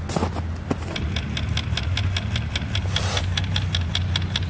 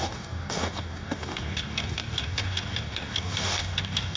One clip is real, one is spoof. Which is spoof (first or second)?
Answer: second